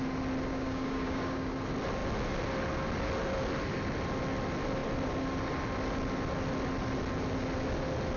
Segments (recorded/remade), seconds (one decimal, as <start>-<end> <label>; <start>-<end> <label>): 0.0-0.5 recorded; 0.5-1.5 remade; 1.5-8.2 recorded